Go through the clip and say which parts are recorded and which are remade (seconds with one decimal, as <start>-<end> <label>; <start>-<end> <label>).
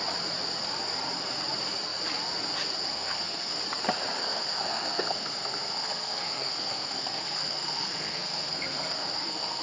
0.0-2.9 recorded; 2.9-3.6 remade; 3.6-4.2 recorded; 4.2-9.6 remade